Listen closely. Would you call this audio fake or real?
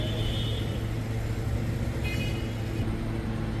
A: real